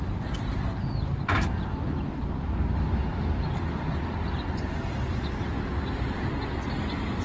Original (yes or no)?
yes